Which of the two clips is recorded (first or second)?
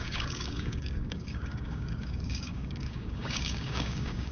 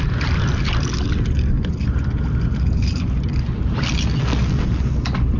second